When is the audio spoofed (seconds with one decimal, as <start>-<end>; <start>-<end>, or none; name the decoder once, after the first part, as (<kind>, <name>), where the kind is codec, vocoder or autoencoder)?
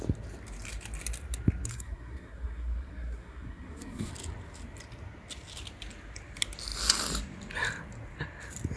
1.7-4.1 (codec, SNAC)